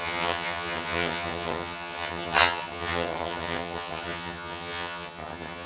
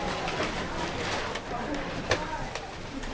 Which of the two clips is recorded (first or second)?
second